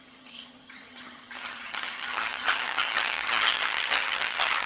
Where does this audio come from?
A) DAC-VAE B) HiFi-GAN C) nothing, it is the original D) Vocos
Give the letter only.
B